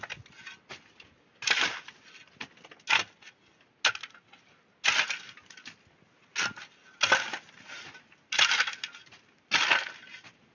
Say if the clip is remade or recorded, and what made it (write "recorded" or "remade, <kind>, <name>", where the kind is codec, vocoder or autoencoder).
recorded